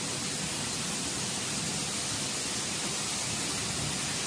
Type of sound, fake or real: real